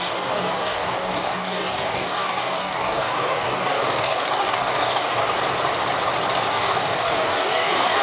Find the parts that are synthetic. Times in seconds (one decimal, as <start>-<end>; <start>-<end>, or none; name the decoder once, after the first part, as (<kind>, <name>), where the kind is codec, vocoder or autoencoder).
0.0-5.2 (codec, DAC); 6.5-8.0